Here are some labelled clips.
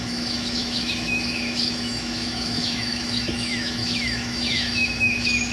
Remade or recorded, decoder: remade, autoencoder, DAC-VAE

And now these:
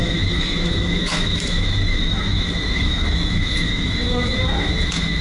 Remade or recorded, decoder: remade, autoencoder, DAC-VAE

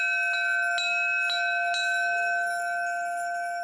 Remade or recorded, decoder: recorded